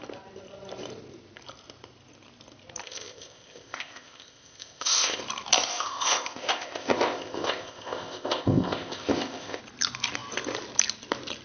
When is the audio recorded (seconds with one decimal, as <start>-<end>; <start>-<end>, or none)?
0.0-2.8; 5.2-5.7; 9.6-11.4